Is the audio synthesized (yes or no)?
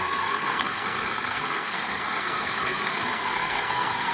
yes